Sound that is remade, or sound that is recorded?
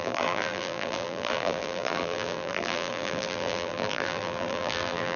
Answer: remade